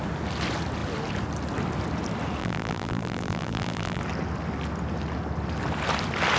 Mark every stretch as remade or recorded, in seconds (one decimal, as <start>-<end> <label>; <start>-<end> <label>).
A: 0.0-2.4 recorded; 2.4-4.0 remade; 4.0-6.4 recorded